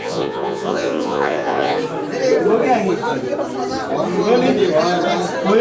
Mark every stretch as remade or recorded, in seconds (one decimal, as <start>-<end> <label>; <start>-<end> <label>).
0.0-1.8 remade; 1.8-5.6 recorded